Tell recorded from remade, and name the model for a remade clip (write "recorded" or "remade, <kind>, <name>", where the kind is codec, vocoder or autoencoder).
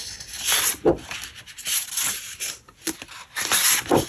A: recorded